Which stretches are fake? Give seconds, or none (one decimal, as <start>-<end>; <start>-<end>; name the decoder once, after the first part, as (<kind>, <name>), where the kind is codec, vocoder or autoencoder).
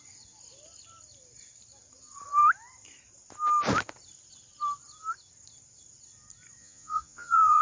6.6-7.6 (vocoder, Vocos)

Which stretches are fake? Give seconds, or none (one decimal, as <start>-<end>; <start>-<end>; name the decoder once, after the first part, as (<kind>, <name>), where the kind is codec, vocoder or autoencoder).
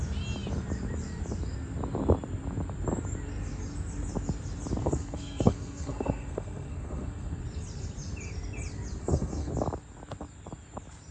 4.8-7.4 (codec, SNAC); 9.0-9.5